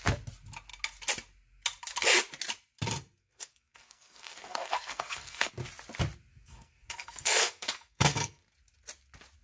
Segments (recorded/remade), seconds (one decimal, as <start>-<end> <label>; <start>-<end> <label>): 0.0-3.2 recorded; 3.2-5.5 remade; 5.5-6.3 recorded; 6.3-8.4 remade; 8.4-9.4 recorded